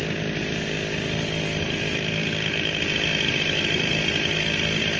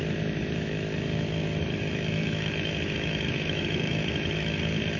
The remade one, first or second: second